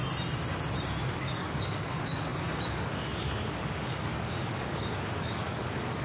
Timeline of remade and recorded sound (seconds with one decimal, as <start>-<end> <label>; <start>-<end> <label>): 0.0-1.0 recorded; 1.0-6.0 remade